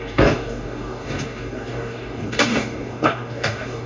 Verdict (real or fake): fake